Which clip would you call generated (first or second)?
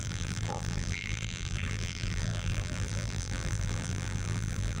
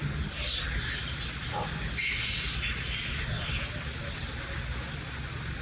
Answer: first